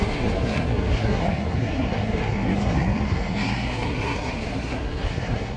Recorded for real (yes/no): no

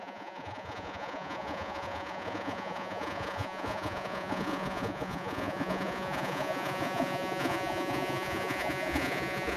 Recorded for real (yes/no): no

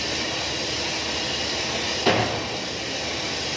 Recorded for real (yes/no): yes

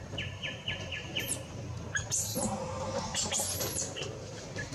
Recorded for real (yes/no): no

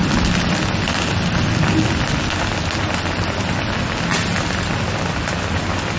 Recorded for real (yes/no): yes